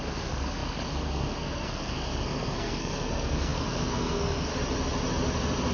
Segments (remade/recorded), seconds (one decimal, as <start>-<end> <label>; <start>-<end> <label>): 0.0-4.5 remade; 4.5-5.7 recorded